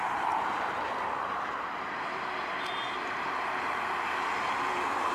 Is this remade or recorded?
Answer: remade